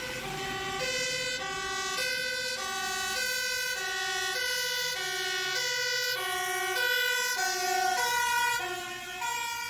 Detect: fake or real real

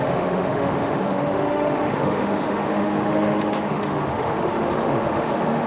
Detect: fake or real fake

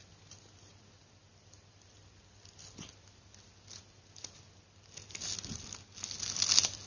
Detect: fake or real real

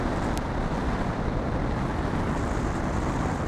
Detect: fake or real real